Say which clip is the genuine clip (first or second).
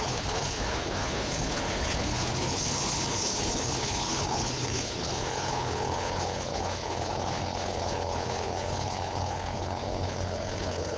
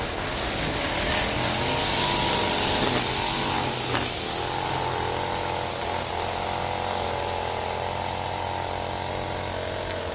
second